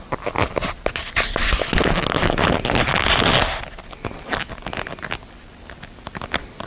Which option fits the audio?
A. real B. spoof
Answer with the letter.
A